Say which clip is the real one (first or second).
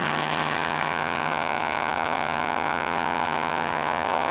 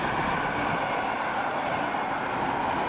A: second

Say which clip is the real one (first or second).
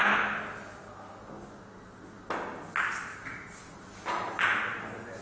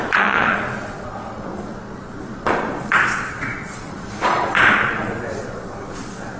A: first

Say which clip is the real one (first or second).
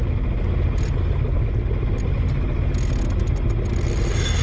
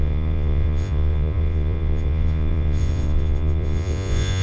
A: first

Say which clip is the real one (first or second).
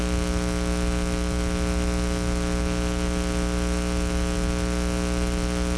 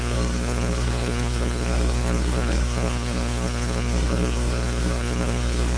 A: first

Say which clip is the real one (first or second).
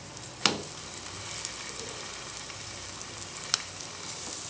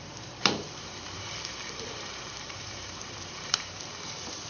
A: first